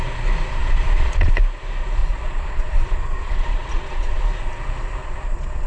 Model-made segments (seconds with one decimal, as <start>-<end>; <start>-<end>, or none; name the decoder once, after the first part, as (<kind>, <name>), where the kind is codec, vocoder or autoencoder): 0.6-1.3 (vocoder, Vocos); 2.0-4.2; 5.0-5.7

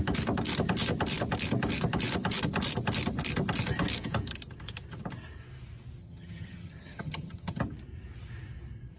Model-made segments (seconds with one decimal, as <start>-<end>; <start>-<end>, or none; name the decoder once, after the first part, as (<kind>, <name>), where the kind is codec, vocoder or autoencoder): 6.0-7.6 (vocoder, HiFi-GAN)